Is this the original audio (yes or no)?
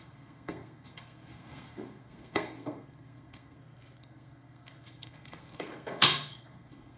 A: no